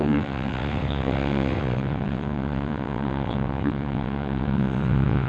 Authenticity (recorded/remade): remade